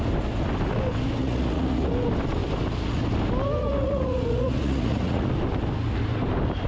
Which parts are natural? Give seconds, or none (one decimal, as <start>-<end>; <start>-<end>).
0.0-1.2; 1.9-3.6; 5.3-6.7